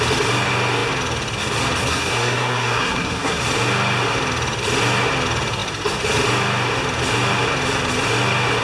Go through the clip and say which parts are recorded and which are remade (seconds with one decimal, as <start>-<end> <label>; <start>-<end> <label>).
0.0-1.8 recorded; 1.8-3.4 remade; 3.4-8.6 recorded